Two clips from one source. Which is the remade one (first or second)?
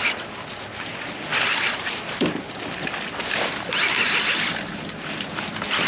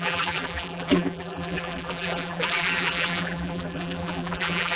second